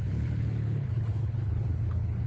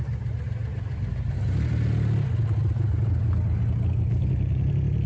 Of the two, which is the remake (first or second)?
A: first